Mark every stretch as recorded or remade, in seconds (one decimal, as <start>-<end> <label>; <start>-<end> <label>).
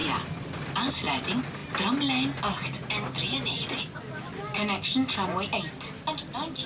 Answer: 0.0-6.7 recorded